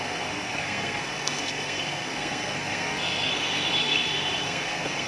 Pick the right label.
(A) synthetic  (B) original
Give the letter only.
A